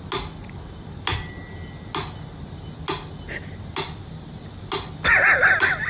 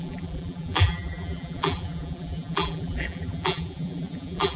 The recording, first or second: first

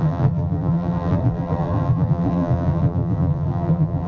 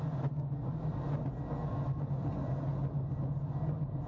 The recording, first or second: second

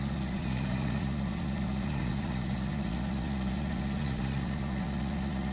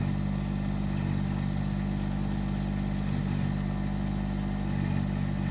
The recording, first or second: second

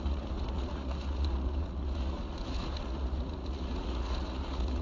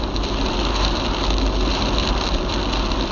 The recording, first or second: second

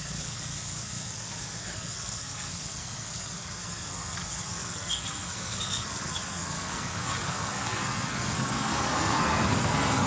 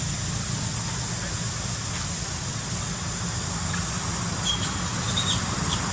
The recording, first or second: second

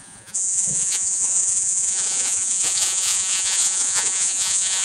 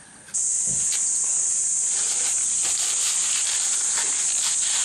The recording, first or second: second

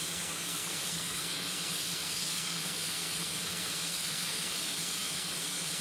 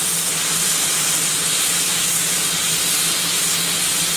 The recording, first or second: second